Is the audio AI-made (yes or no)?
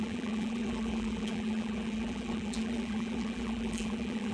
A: yes